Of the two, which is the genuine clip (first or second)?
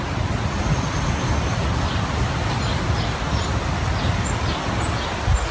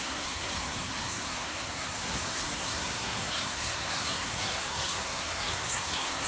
first